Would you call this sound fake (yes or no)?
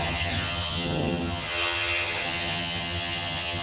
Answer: yes